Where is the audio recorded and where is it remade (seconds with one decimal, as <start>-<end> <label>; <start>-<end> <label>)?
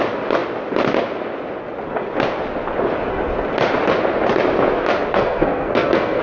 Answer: 0.0-5.1 recorded; 5.1-6.2 remade